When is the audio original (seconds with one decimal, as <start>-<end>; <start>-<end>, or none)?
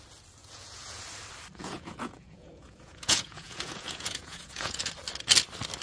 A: 0.0-0.4; 1.0-1.6; 4.8-5.8